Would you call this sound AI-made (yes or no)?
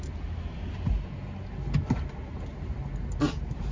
no